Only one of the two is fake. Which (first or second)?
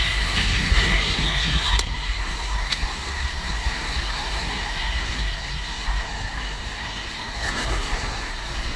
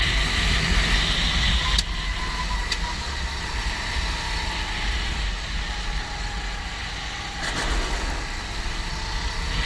first